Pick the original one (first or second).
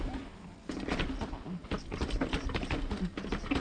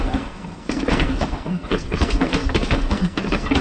first